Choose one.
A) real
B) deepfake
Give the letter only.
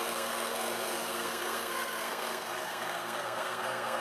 B